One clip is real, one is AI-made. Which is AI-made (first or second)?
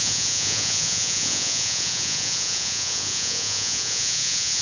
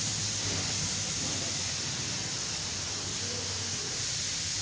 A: first